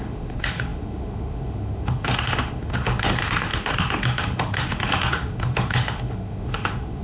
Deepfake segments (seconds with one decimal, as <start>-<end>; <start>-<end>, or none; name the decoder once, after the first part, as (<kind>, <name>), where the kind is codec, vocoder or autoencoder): 0.0-7.0 (autoencoder, DAC-VAE)